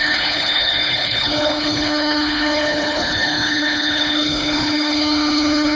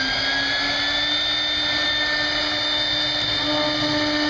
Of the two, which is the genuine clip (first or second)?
second